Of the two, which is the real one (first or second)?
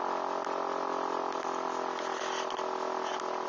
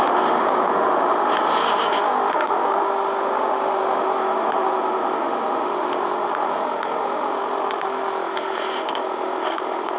first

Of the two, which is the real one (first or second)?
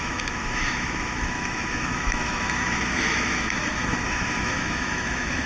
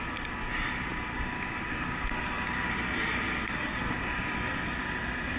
second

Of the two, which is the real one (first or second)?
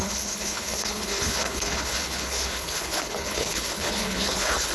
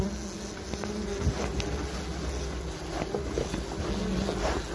second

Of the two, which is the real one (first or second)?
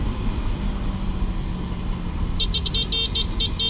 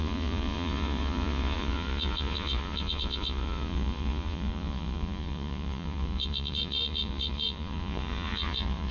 first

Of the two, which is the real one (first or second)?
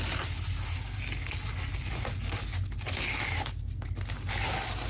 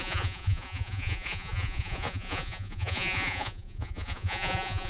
first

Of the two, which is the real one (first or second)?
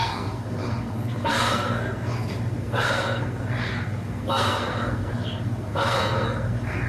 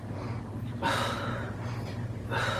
second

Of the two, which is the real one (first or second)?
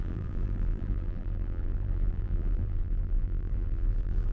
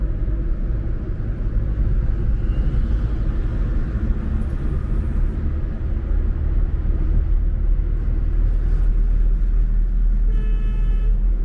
second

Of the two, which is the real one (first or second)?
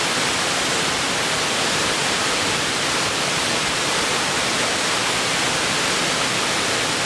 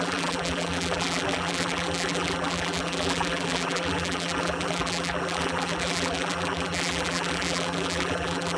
first